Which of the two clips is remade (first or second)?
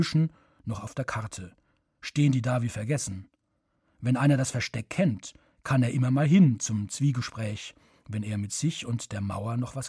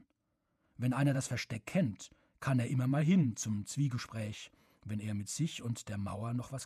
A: second